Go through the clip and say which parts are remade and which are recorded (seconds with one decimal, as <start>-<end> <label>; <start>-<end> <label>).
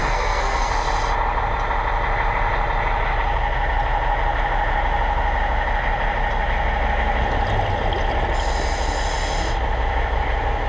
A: 0.0-0.7 remade; 0.7-10.7 recorded